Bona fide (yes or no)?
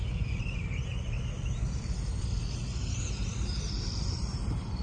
no